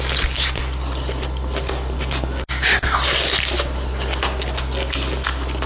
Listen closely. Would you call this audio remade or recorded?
recorded